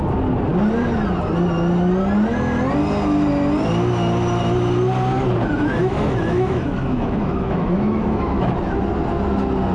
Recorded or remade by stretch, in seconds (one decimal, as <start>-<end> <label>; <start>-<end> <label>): 0.0-5.8 recorded; 5.8-8.5 remade; 8.5-9.7 recorded